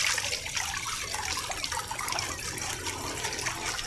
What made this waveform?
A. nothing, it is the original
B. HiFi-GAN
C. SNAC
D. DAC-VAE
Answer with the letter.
A